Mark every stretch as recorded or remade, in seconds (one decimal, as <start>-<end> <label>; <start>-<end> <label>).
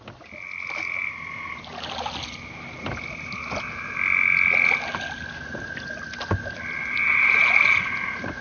0.0-6.8 recorded; 6.8-8.4 remade